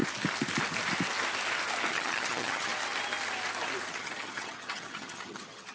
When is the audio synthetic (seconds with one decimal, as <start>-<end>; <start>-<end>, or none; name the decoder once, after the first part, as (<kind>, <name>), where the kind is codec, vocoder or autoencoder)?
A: 1.9-2.7 (vocoder, HiFi-GAN); 3.9-5.7